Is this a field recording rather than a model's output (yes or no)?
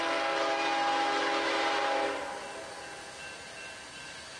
yes